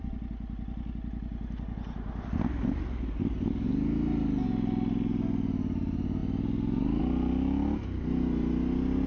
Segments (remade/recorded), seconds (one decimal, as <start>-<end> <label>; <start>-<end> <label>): 0.0-9.1 recorded